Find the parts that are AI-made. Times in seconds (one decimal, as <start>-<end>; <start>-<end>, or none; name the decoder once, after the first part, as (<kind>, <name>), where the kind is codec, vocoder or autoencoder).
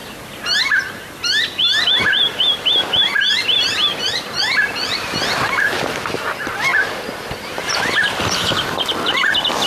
6.7-8.9 (vocoder, BigVGAN v2)